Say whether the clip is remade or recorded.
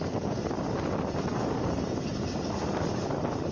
recorded